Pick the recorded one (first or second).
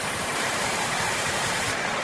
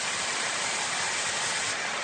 second